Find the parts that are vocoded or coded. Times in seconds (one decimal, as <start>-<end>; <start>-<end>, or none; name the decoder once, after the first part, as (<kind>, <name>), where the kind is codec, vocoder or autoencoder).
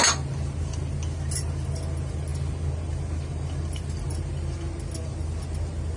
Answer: none